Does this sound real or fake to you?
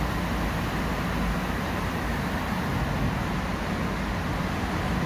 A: real